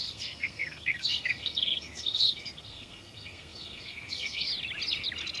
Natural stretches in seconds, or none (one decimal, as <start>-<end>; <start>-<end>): 4.5-5.4